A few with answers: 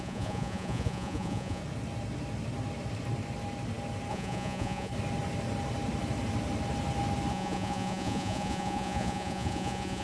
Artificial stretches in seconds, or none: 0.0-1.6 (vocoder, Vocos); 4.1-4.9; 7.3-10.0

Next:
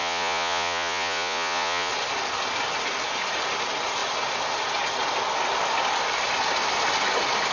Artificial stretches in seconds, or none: 0.0-1.9 (vocoder, Vocos)

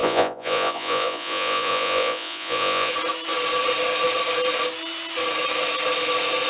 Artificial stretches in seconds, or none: 0.0-2.9 (vocoder, Vocos)

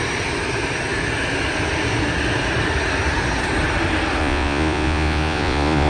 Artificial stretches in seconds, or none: 4.2-5.9 (vocoder, Vocos)

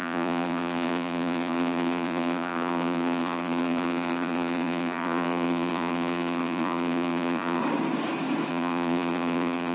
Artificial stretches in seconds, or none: 0.0-7.6 (vocoder, Vocos); 8.5-9.7

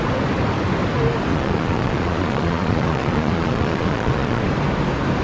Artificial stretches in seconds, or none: 1.3-4.4 (vocoder, Vocos)